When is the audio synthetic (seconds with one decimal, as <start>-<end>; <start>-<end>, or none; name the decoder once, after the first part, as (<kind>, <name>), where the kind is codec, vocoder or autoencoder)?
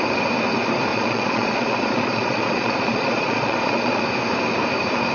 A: 0.9-4.0 (vocoder, Vocos)